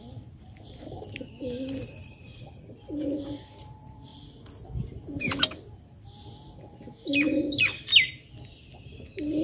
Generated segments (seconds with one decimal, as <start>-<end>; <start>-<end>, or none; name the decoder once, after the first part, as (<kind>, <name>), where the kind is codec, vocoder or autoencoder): 2.0-2.8 (vocoder, Vocos)